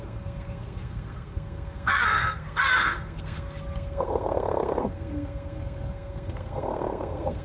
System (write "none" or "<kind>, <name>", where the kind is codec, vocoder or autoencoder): codec, SNAC